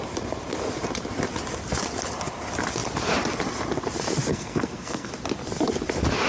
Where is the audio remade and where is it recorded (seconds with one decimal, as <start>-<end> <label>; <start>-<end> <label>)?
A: 0.0-4.3 recorded; 4.3-5.1 remade; 5.1-6.3 recorded